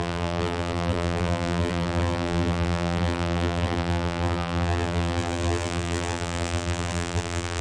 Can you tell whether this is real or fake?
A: fake